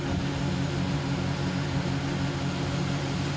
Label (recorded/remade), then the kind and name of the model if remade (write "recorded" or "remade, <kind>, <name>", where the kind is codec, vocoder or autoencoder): recorded